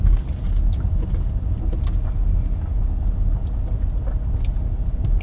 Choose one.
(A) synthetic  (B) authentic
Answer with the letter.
B